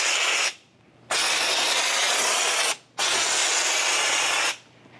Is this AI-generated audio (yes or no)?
no